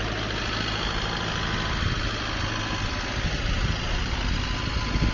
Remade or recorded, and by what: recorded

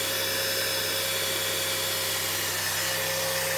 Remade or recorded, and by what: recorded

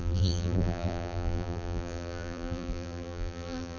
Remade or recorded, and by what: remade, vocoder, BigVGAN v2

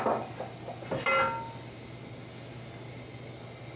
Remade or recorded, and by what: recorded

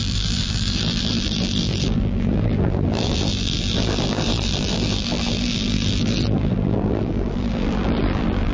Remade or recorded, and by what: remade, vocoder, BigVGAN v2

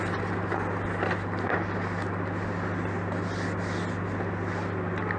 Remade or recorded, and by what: recorded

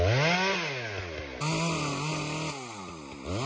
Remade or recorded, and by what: recorded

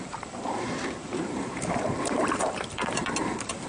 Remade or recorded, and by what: remade, vocoder, BigVGAN v2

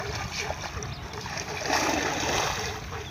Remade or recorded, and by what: recorded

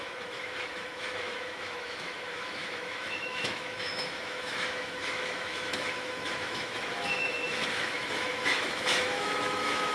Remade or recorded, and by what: remade, autoencoder, DAC-VAE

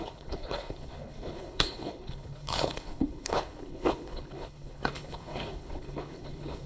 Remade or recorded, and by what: remade, codec, HILCodec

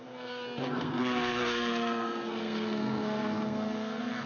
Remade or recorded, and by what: remade, codec, SNAC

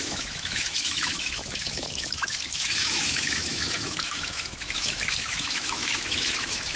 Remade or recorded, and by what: remade, autoencoder, DAC-VAE